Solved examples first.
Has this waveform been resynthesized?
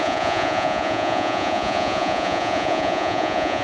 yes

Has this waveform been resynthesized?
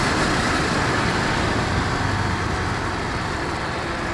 no